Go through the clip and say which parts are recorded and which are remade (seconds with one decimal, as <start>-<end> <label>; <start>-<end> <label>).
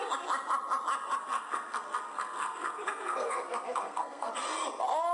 0.0-1.2 recorded; 1.2-4.3 remade; 4.3-5.1 recorded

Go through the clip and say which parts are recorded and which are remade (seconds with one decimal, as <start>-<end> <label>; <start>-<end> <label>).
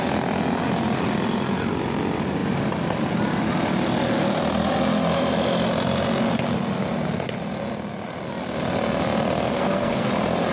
0.0-9.5 recorded; 9.5-10.1 remade; 10.1-10.5 recorded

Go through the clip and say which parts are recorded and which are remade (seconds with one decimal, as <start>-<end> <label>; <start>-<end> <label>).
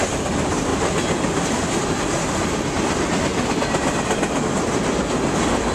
0.0-5.7 recorded